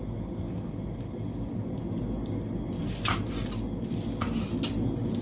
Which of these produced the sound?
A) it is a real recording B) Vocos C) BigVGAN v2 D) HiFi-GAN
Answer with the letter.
A